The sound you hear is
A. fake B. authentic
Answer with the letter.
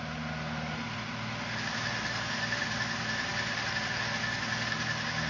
B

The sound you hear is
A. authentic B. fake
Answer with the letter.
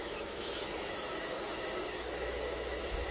B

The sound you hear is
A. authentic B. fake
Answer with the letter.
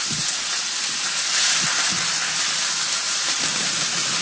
A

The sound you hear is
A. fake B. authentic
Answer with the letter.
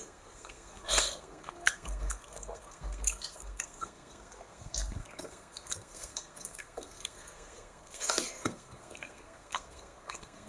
A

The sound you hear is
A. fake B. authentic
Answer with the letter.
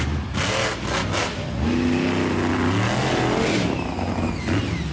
B